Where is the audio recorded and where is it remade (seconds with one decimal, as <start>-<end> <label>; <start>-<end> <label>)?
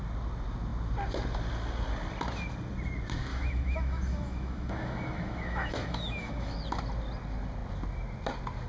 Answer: 0.0-3.3 recorded; 3.3-6.6 remade; 6.6-8.7 recorded